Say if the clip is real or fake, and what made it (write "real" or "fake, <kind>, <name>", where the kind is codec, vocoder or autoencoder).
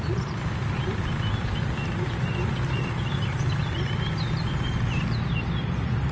real